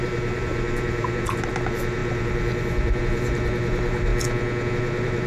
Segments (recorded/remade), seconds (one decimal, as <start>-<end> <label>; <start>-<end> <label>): 0.0-4.1 remade; 4.1-4.7 recorded; 4.7-5.3 remade